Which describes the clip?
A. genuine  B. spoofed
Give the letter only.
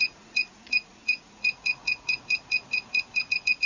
B